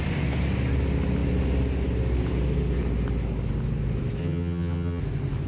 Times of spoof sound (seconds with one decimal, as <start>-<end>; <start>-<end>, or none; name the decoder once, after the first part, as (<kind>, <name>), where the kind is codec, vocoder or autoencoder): 4.2-5.0 (vocoder, HiFi-GAN)